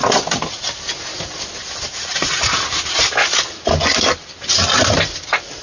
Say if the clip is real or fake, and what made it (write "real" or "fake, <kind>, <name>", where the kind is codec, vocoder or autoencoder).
real